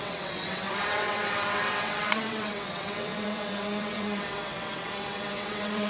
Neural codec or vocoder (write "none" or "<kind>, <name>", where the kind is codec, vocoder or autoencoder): vocoder, WaveNeXt